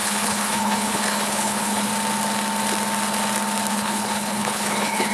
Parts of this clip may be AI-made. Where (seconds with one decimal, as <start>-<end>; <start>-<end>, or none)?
0.0-1.9; 3.7-5.1